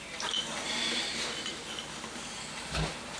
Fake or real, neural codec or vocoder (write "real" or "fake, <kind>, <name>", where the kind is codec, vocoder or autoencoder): real